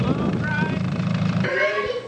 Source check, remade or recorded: remade